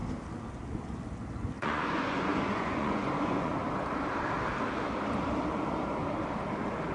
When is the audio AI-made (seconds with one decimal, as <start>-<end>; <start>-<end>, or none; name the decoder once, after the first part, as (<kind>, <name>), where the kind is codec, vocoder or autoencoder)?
1.6-3.5 (vocoder, Vocos)